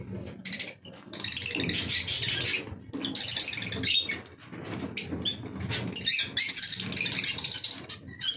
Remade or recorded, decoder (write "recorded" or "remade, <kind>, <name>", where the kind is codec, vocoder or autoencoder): recorded